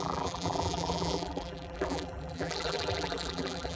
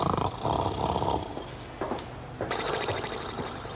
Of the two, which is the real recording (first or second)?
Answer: second